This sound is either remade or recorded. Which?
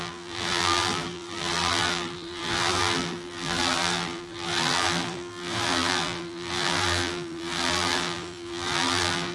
remade